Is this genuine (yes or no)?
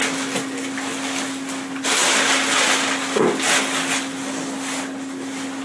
yes